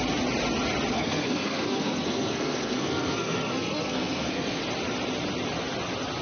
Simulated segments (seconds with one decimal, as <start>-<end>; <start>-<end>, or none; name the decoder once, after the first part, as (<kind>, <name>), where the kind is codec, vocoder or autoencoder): 0.9-4.6 (codec, SNAC)